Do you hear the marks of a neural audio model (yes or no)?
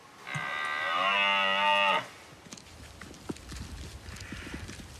no